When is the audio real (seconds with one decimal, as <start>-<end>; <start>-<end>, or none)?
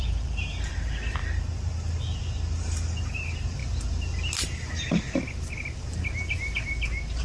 1.2-3.0; 3.6-7.2